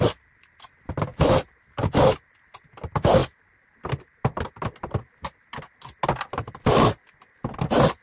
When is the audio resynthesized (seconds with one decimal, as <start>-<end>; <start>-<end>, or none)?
none

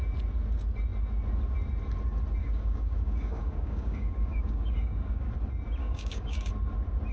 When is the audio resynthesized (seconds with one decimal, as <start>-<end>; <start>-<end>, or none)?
2.4-5.3; 5.8-6.5